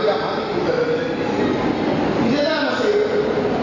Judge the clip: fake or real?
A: real